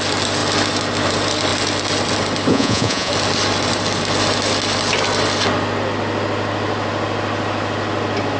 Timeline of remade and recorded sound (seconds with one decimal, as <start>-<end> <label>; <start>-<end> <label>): 0.0-2.5 recorded; 2.5-3.1 remade; 3.1-8.4 recorded